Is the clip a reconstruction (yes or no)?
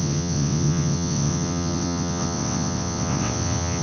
yes